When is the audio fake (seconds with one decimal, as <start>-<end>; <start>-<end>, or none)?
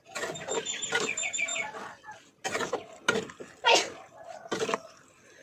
none